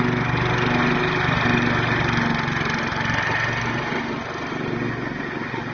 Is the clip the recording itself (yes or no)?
yes